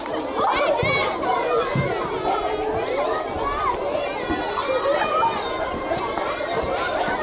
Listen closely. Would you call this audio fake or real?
real